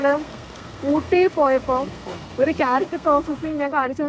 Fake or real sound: fake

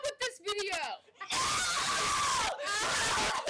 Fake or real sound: real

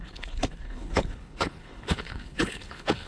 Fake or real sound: fake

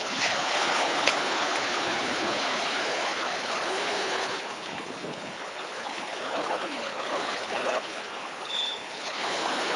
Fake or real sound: fake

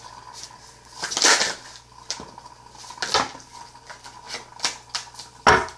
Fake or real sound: real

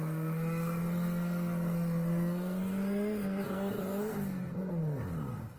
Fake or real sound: fake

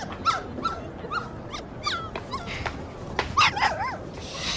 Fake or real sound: real